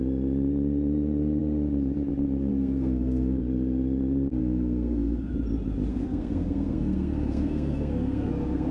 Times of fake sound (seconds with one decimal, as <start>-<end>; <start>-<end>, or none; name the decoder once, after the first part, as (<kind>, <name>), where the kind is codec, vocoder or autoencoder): 2.5-3.4 (codec, SNAC); 4.4-5.3; 5.9-8.7